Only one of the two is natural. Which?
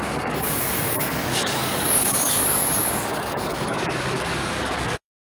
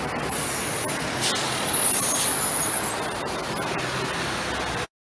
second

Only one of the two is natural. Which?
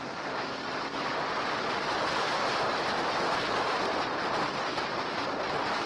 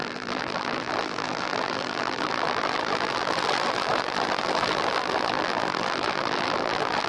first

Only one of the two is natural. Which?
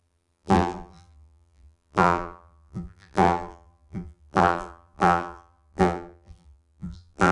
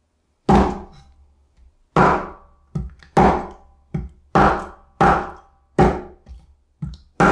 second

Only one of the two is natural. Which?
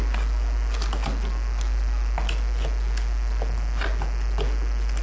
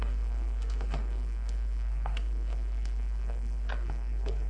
first